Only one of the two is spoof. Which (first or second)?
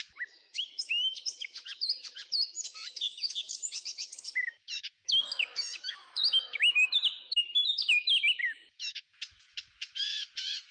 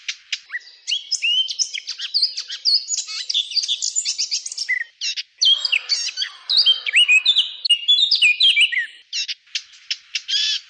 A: first